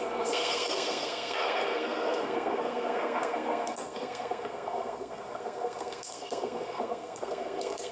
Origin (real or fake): fake